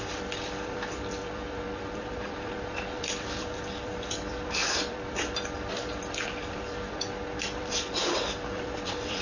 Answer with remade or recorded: remade